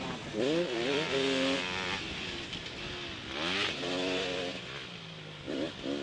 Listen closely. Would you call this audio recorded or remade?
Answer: recorded